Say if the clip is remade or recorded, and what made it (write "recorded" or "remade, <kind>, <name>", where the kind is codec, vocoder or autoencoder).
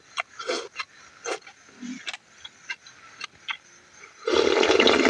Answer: recorded